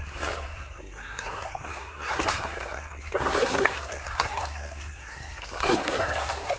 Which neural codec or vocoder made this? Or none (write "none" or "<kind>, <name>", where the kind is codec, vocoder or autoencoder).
codec, SNAC